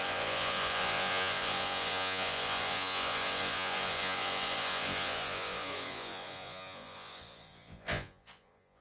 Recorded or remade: remade